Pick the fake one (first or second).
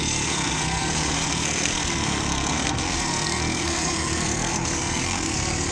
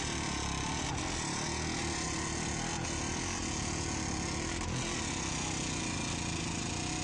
first